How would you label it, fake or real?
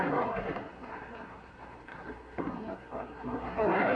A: fake